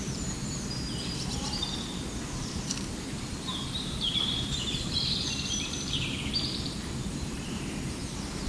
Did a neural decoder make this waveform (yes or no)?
yes